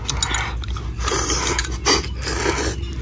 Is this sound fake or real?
real